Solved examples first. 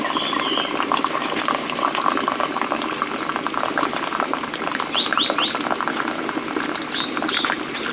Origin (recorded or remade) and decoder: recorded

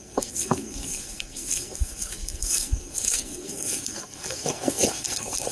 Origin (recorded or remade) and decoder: remade, codec, SNAC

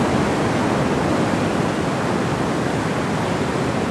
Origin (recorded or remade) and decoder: recorded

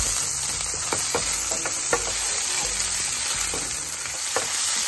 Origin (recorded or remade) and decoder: recorded